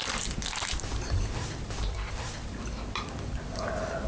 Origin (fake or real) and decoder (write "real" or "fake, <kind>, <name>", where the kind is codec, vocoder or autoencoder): fake, vocoder, BigVGAN v2